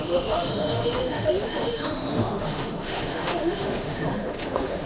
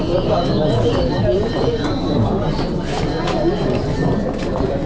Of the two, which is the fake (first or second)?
first